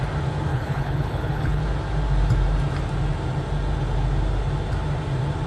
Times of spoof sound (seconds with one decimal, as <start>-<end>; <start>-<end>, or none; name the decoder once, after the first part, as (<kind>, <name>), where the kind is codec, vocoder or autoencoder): 0.5-1.6 (codec, HILCodec)

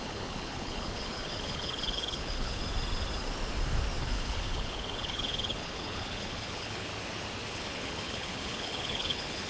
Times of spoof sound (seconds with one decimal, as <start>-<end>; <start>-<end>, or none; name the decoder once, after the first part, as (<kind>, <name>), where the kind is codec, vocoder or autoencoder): 0.0-2.6 (codec, HILCodec); 4.0-6.9; 7.5-9.5

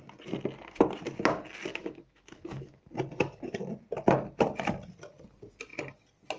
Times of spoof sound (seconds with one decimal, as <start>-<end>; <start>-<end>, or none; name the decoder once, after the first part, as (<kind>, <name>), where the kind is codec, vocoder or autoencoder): 1.7-2.8 (autoencoder, DAC-VAE)

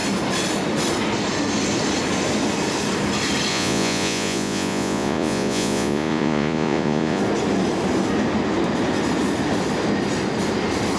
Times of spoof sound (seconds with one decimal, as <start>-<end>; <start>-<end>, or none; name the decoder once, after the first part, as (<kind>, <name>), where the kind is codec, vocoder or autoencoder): 3.5-7.2 (vocoder, Vocos)

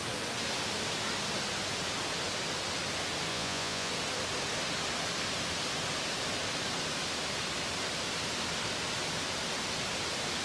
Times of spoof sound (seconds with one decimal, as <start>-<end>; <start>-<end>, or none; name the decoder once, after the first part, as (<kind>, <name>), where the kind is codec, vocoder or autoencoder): 3.3-3.9 (vocoder, Vocos)

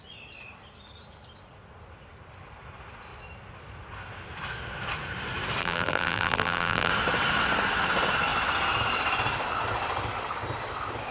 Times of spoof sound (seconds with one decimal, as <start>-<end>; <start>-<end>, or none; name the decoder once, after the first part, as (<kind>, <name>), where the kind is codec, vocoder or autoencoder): 5.6-6.9 (vocoder, BigVGAN v2)

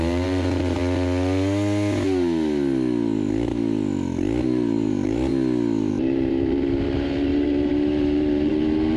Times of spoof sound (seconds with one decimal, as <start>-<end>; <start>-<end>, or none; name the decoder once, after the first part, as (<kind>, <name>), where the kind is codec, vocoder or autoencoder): 0.0-0.8 (vocoder, BigVGAN v2); 4.4-5.3; 5.9-9.0